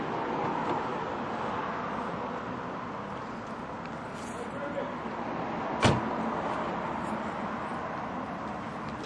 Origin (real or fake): real